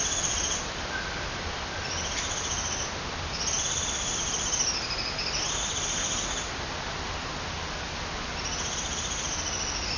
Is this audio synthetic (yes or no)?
no